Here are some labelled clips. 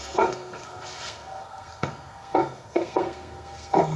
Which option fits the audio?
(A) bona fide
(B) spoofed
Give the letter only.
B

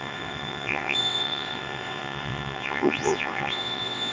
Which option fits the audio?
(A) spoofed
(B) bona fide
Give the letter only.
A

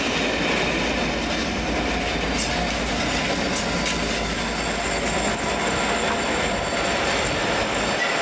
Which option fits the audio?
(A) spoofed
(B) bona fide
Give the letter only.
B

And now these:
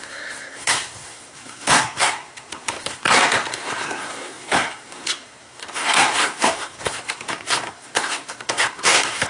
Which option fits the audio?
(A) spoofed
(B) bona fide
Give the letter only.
A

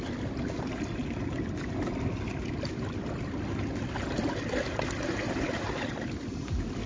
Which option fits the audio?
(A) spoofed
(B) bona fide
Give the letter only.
B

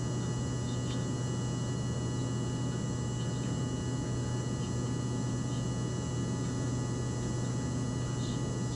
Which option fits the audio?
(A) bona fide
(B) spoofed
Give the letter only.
A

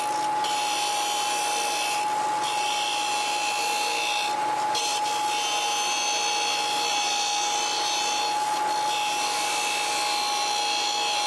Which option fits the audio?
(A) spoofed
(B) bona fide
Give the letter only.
B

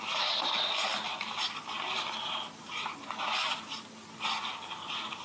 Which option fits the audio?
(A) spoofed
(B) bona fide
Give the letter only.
B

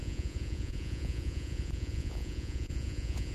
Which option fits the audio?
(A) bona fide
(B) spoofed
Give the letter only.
B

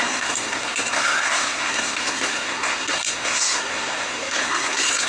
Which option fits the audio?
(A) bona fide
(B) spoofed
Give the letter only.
B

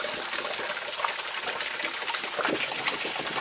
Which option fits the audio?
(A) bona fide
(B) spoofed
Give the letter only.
A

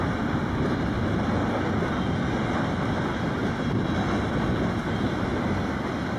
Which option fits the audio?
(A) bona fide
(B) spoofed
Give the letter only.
A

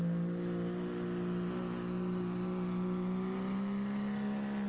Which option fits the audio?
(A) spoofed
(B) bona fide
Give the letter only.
B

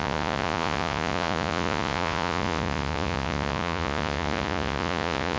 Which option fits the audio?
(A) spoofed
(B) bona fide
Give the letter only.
A